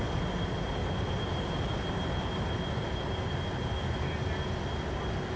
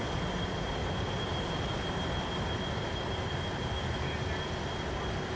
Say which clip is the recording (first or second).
first